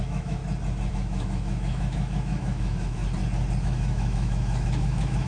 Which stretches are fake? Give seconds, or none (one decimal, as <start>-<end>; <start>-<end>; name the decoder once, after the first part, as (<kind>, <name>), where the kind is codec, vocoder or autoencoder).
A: 0.0-0.4 (autoencoder, DAC-VAE); 0.9-3.0; 3.6-5.3